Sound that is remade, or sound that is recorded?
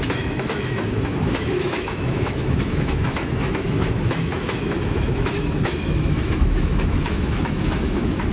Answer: remade